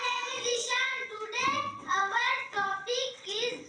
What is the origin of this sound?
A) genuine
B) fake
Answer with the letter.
B